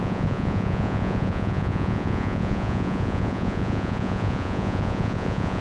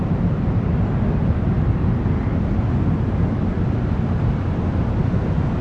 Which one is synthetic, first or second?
first